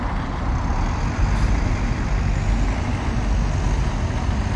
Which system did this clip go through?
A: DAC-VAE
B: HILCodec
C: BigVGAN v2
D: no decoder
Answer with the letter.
D